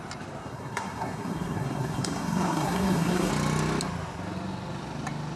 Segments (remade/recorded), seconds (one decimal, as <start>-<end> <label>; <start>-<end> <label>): 0.0-0.4 recorded; 0.4-3.3 remade; 3.3-5.4 recorded